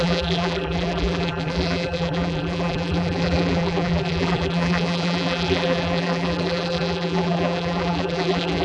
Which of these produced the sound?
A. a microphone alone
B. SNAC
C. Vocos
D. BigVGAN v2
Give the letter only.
D